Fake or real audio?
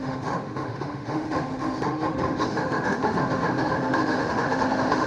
fake